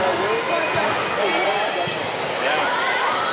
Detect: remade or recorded recorded